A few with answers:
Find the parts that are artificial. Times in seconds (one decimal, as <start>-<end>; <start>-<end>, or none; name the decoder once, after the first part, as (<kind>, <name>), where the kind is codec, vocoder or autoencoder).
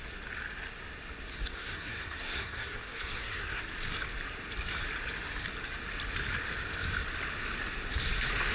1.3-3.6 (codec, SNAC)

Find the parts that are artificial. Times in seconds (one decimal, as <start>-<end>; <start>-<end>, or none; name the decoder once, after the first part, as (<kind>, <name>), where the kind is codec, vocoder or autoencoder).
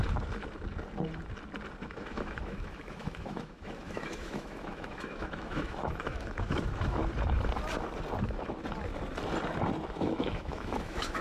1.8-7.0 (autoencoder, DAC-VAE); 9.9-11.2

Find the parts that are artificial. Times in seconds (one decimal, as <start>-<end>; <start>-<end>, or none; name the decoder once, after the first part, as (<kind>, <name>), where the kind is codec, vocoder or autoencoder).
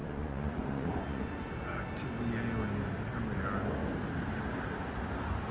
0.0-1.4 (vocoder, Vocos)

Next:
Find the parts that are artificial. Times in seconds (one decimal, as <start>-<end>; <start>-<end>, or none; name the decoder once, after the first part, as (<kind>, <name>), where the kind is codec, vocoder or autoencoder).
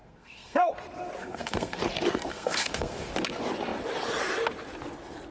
0.0-0.7 (codec, SNAC); 1.2-1.8; 2.3-3.1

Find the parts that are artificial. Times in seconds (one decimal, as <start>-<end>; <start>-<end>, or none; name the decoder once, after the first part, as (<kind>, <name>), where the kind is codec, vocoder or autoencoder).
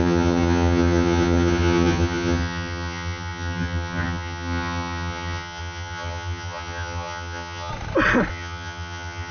0.0-7.7 (vocoder, HiFi-GAN); 8.3-9.3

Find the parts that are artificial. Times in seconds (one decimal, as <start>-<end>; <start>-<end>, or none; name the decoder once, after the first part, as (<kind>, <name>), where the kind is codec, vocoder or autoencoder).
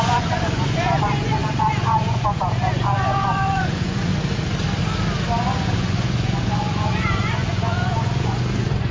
0.0-4.1 (vocoder, Vocos); 5.4-8.9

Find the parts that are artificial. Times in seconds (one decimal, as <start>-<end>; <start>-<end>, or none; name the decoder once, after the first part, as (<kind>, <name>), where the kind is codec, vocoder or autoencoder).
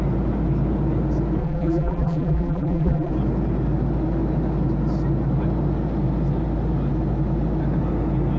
1.4-3.1 (vocoder, BigVGAN v2)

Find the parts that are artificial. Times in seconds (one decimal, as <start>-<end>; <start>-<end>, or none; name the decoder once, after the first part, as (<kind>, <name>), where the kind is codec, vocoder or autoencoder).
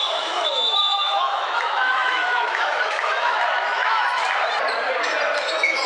0.0-4.2 (autoencoder, DAC-VAE); 5.4-5.9